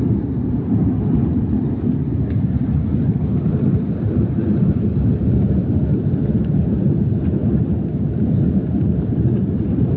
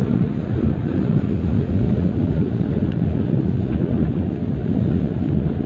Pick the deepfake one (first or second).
second